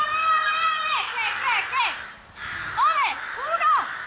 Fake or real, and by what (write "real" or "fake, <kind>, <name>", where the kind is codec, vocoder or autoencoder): real